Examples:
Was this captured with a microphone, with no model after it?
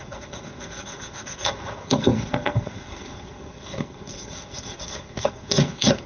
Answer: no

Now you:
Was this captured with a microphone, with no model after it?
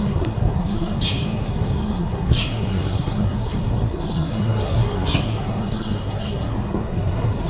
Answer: no